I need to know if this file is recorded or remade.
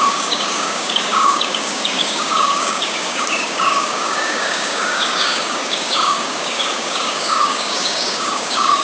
remade